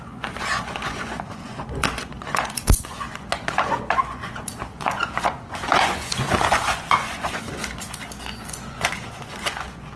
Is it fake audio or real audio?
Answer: fake